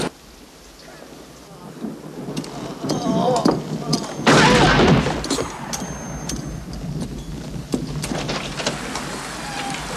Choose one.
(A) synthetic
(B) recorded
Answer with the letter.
B